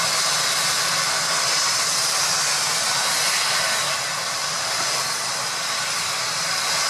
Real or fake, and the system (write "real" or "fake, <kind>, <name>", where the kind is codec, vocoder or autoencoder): real